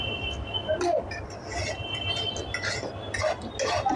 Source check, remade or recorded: recorded